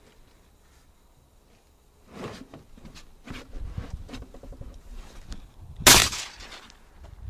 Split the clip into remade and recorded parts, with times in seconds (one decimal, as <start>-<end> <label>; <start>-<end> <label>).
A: 0.0-7.3 recorded